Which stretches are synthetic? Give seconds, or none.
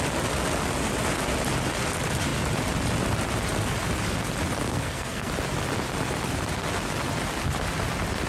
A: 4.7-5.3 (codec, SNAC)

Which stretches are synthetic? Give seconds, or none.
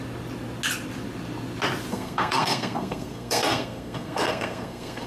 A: 1.9-5.1 (codec, SNAC)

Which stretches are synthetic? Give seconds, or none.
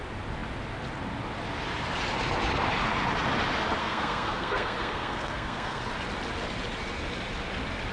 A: 3.8-5.8 (codec, SNAC)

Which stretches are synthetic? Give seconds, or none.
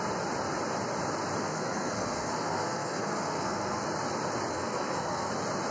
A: 1.4-3.8 (codec, SNAC); 4.5-5.3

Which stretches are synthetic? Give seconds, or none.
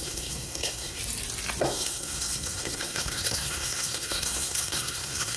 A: 0.0-1.0 (codec, SNAC); 1.6-5.4